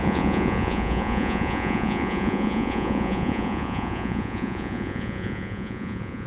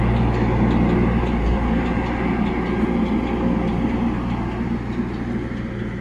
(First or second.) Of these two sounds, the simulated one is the first